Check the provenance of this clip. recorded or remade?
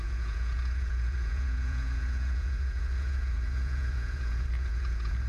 remade